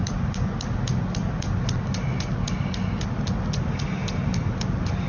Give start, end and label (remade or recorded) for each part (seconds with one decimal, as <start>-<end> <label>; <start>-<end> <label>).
0.0-5.1 recorded